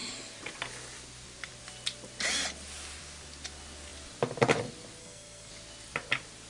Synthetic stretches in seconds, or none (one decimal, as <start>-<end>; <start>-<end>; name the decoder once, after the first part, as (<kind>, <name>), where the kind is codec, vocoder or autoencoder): 5.0-5.5 (codec, SNAC)